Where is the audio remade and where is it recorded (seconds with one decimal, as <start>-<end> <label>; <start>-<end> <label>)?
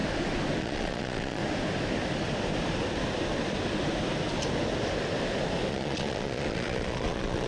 0.0-0.6 recorded; 0.6-1.4 remade; 1.4-5.7 recorded; 5.7-7.5 remade